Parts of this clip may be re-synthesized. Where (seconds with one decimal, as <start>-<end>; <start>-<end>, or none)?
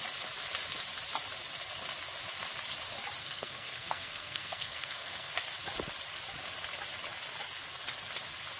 3.2-5.3